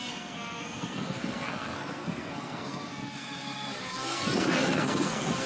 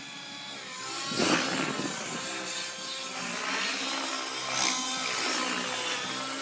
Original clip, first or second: second